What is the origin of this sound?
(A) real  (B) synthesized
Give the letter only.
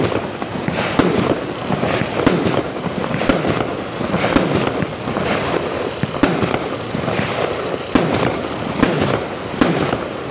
A